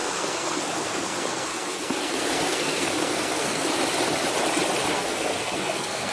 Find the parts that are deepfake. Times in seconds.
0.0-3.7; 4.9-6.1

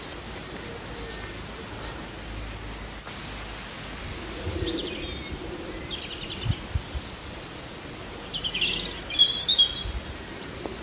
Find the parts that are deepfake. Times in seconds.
none